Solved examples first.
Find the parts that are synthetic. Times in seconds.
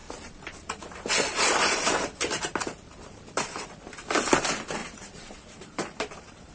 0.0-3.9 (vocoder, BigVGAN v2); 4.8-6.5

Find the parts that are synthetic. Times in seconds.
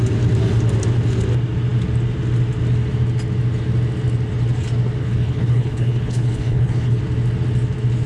5.0-7.0 (codec, HILCodec)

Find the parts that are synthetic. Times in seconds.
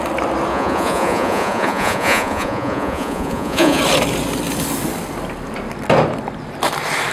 0.5-3.8 (vocoder, Vocos)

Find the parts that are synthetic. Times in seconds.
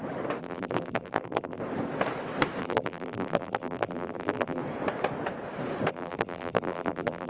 0.4-1.6 (vocoder, BigVGAN v2); 2.6-4.6; 5.9-7.3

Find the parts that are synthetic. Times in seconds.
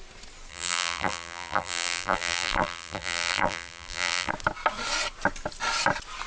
0.5-4.3 (vocoder, BigVGAN v2)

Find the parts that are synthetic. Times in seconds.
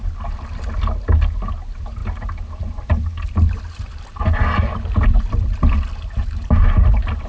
none